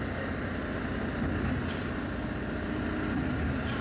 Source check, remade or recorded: recorded